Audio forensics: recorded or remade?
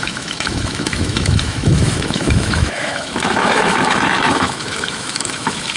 remade